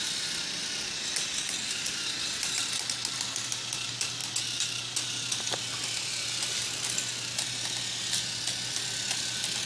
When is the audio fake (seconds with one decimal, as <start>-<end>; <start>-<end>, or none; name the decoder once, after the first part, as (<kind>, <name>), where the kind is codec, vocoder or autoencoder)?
none